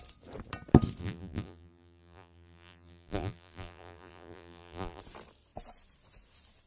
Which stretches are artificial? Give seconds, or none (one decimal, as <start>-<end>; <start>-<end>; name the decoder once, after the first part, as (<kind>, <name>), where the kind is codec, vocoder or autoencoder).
1.0-5.0 (vocoder, BigVGAN v2)